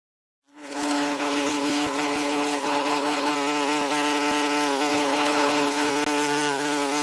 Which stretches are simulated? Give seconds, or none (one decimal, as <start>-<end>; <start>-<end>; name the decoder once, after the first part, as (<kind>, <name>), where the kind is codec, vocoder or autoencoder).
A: 0.5-3.3 (codec, HILCodec); 4.9-5.9